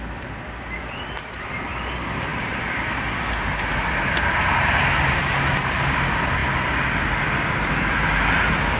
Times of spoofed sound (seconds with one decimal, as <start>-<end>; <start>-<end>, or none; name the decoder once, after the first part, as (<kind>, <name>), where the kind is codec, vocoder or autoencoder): none